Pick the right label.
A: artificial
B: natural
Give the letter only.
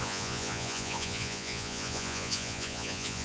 A